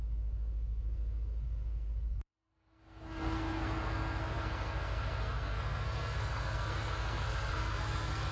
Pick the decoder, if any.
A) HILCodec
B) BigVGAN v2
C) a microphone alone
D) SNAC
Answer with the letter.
D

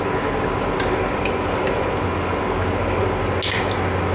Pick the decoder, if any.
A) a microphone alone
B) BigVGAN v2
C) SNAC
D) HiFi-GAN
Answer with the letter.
A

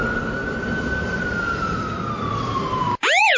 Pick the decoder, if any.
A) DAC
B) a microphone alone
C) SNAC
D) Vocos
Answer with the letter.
B